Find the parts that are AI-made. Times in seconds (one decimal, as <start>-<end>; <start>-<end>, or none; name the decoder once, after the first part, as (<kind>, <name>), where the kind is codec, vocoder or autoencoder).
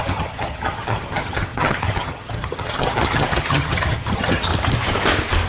0.0-4.5 (vocoder, HiFi-GAN)